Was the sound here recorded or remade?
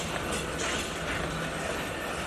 recorded